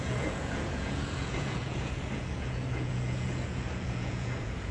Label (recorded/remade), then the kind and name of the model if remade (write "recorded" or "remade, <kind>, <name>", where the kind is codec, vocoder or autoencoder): remade, vocoder, Vocos